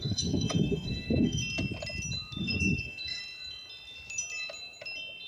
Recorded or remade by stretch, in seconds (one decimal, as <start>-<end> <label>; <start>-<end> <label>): 0.0-1.4 remade; 1.4-2.4 recorded; 2.4-3.2 remade; 3.2-5.3 recorded